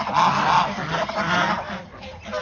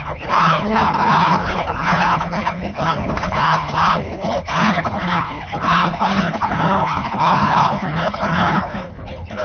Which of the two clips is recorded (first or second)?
first